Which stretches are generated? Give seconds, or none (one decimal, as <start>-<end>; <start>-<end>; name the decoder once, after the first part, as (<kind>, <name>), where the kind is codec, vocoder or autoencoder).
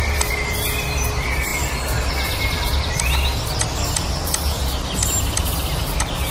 none